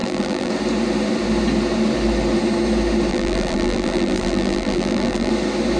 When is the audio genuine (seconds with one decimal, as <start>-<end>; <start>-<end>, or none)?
0.5-3.1; 5.3-5.8